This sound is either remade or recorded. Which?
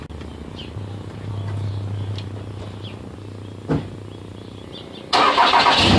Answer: recorded